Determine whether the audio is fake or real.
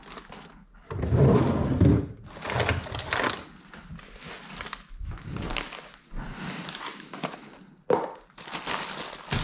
real